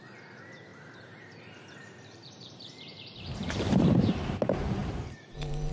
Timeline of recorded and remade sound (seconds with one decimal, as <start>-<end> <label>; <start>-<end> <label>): 0.0-0.7 recorded; 0.7-4.1 remade; 4.1-4.8 recorded; 4.8-5.7 remade